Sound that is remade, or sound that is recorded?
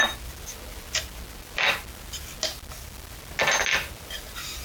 recorded